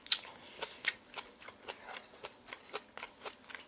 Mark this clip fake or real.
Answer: real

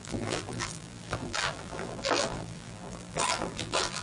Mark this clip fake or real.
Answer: fake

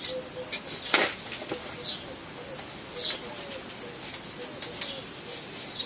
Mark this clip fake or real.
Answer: real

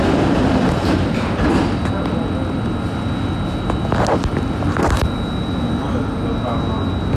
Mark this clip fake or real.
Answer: real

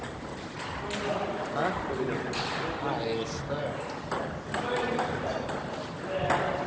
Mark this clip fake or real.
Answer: real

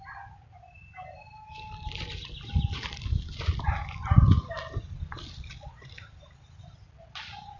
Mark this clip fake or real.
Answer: real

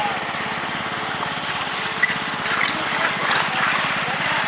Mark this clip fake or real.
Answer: real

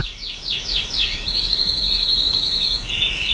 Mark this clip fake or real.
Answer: fake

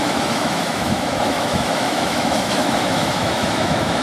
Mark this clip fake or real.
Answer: fake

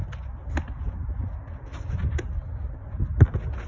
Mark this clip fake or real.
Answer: real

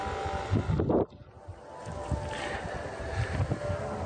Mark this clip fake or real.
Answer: real